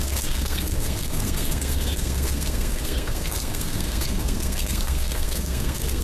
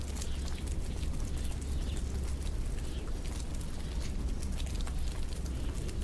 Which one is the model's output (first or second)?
first